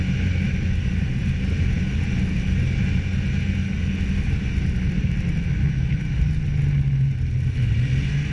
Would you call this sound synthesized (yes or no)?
no